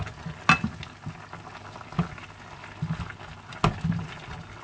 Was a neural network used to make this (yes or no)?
no